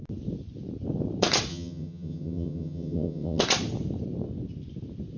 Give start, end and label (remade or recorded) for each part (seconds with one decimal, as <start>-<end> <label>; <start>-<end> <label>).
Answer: 0.0-1.5 recorded; 1.5-3.4 remade; 3.4-5.2 recorded